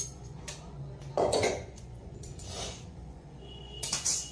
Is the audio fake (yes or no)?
yes